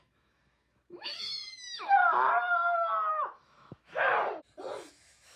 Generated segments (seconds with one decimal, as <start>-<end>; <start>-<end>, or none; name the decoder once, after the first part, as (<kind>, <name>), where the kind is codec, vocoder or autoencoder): 0.0-2.0 (autoencoder, DAC-VAE); 3.1-4.1; 4.9-5.4